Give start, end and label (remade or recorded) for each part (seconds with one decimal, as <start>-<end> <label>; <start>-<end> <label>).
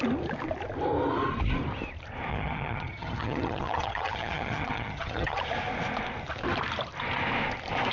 0.0-2.3 recorded; 2.3-5.4 remade; 5.4-7.9 recorded